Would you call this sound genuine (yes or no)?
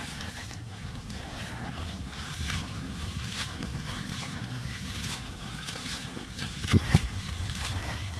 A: no